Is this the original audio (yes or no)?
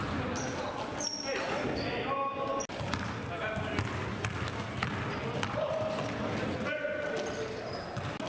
yes